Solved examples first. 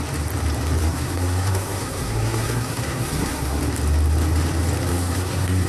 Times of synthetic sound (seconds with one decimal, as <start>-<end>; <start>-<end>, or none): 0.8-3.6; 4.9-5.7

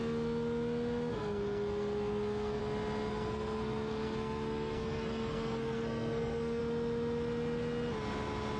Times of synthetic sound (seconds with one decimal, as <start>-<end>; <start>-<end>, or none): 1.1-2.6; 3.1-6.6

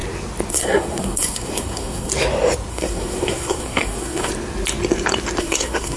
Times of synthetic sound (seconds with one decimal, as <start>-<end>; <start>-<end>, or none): 0.5-2.1; 2.7-4.3; 5.4-6.0

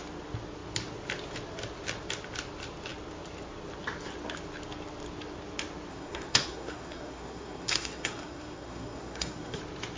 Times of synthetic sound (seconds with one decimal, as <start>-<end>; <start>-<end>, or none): 5.9-9.6

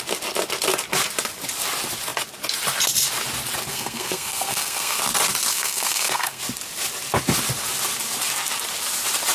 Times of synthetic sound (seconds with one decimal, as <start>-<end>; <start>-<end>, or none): 3.7-5.0; 5.5-6.4